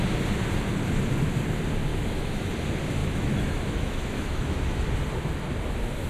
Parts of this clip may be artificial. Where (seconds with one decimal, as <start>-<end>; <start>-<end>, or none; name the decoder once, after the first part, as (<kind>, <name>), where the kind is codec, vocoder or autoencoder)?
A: 1.9-2.5 (autoencoder, DAC-VAE); 3.0-4.8